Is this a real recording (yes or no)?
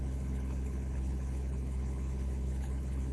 no